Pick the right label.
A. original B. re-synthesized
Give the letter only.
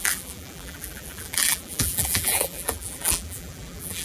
B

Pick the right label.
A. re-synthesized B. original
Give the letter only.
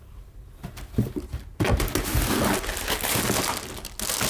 B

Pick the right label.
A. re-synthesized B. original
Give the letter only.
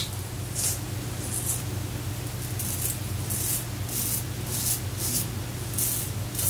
B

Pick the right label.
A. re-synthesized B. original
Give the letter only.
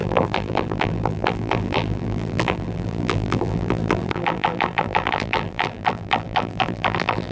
A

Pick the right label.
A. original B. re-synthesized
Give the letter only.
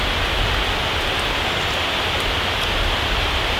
A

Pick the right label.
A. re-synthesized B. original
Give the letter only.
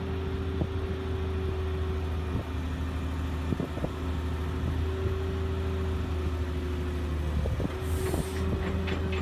B